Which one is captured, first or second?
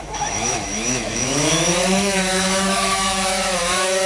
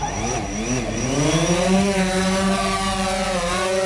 second